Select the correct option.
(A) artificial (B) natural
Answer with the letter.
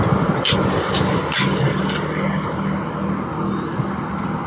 B